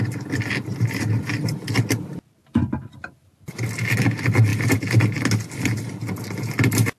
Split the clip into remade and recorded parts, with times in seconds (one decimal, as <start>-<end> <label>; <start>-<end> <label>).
0.0-2.4 recorded; 2.4-3.5 remade; 3.5-7.0 recorded